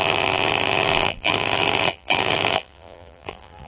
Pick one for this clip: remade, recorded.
remade